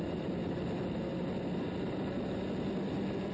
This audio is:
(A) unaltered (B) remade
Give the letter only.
A